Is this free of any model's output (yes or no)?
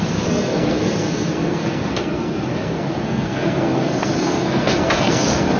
no